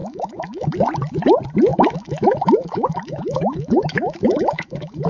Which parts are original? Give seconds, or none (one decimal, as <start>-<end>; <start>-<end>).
0.7-1.7